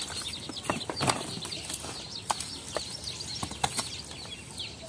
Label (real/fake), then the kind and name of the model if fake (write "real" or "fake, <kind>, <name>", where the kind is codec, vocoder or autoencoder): real